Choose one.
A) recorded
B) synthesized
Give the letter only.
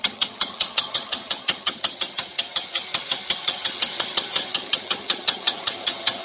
B